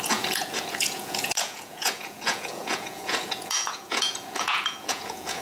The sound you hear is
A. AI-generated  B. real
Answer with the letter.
A